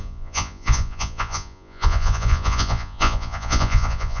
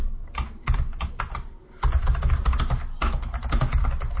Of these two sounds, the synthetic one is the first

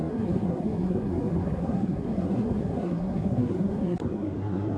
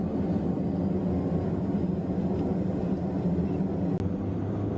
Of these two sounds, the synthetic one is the first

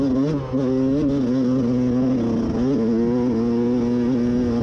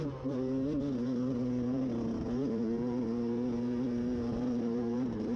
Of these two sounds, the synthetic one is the second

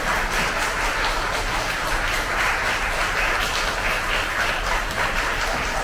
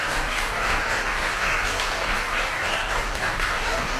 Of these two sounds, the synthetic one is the second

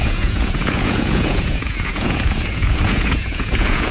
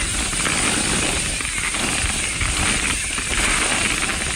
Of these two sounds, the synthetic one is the first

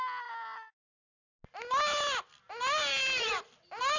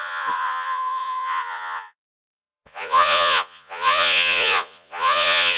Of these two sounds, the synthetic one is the second